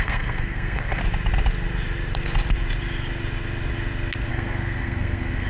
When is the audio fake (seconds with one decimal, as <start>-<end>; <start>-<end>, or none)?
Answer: 0.0-1.0; 4.3-5.5